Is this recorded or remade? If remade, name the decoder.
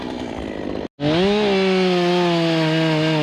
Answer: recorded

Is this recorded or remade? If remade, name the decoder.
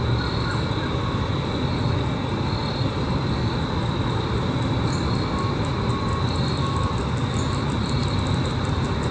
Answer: recorded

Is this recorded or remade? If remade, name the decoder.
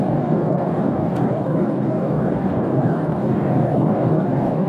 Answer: remade, codec, DAC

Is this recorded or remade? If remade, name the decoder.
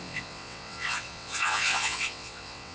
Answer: remade, vocoder, WaveNeXt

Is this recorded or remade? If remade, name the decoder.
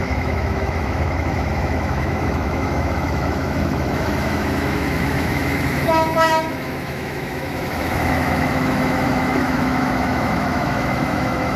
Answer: remade, autoencoder, DAC-VAE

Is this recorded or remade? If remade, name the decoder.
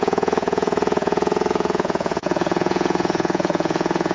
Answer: remade, vocoder, Vocos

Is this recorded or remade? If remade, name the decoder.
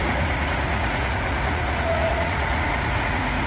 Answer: remade, vocoder, Vocos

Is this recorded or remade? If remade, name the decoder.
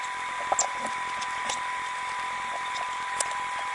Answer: recorded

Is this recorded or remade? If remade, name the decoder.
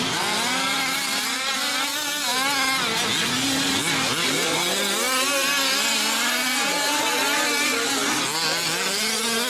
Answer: recorded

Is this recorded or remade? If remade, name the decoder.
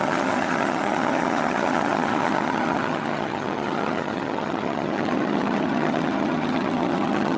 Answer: remade, vocoder, HiFi-GAN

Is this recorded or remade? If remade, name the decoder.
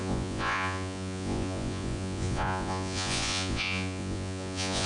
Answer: remade, vocoder, Vocos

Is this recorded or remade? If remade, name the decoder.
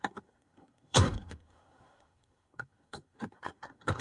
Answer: remade, codec, SNAC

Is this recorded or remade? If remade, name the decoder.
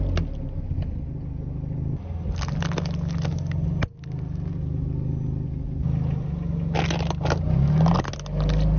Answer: recorded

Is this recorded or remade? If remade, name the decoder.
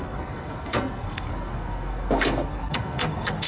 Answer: remade, codec, SNAC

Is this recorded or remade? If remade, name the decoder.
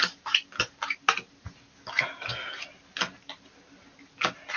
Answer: recorded